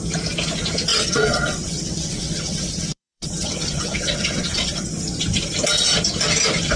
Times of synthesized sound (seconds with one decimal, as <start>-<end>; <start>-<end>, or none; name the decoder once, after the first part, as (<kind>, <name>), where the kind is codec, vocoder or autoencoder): 0.9-4.9 (vocoder, WaveNeXt)